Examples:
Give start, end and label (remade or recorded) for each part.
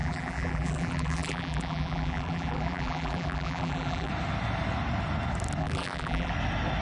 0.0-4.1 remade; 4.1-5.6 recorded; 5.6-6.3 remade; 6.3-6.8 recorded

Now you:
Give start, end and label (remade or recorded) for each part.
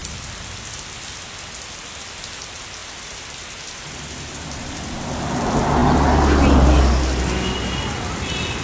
0.0-2.8 recorded; 2.8-4.9 remade; 4.9-8.6 recorded